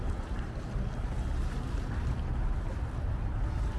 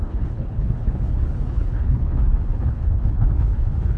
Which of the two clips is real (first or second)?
first